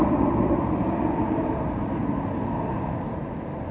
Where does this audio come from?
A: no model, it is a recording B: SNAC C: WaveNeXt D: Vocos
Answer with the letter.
A